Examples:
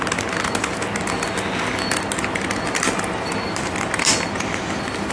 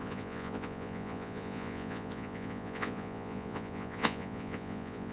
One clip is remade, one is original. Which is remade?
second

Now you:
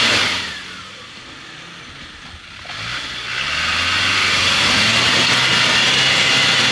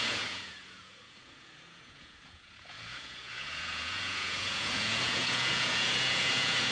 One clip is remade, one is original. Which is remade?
second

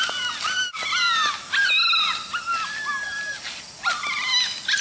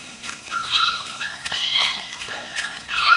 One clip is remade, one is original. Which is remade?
second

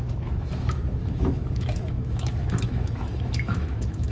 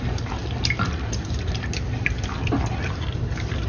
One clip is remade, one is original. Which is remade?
first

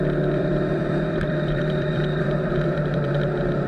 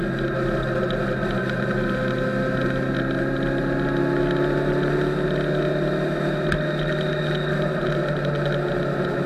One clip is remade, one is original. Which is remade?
first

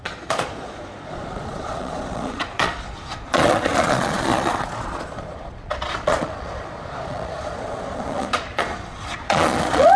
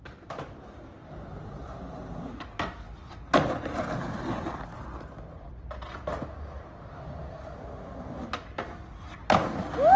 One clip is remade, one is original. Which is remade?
first